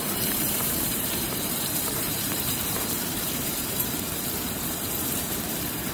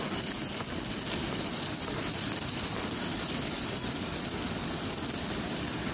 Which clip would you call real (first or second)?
second